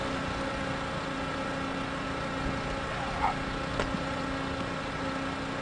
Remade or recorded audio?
recorded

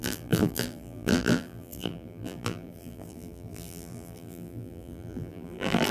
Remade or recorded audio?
remade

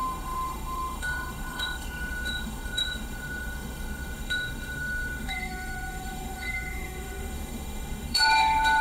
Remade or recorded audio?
remade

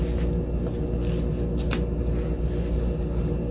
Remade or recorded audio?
recorded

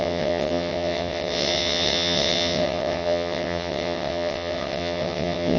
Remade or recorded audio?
remade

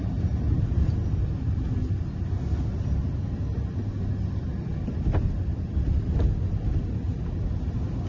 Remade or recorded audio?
recorded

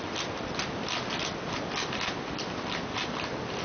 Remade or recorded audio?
recorded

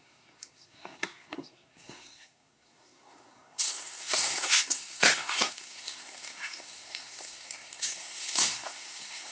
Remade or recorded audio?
remade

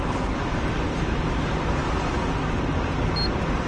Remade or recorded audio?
recorded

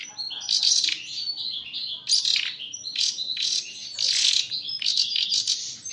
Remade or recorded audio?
recorded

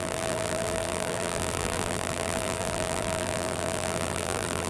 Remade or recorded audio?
remade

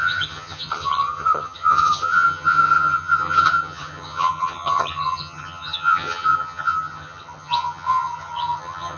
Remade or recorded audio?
remade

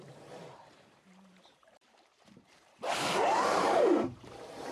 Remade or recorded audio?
remade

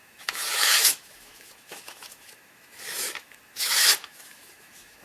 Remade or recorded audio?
remade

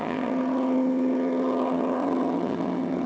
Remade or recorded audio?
remade